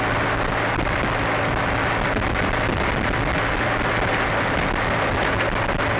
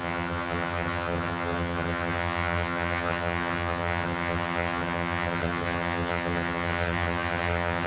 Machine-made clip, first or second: second